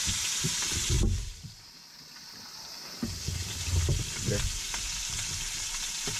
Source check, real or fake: real